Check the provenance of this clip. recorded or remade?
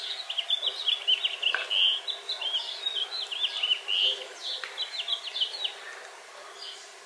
recorded